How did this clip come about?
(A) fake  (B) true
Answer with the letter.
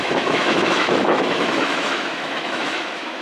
A